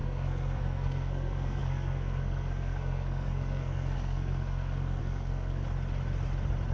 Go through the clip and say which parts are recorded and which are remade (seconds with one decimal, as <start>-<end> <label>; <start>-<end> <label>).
0.0-5.6 remade; 5.6-6.7 recorded